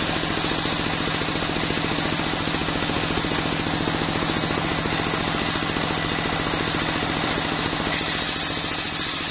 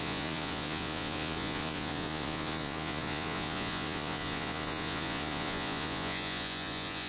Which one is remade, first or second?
second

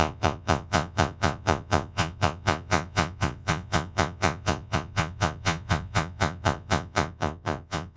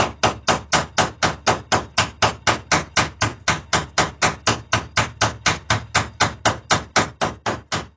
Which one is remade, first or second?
first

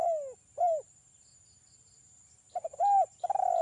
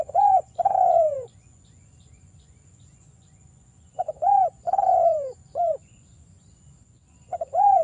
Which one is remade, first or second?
second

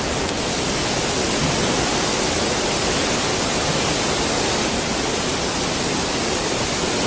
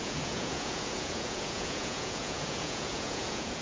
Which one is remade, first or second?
second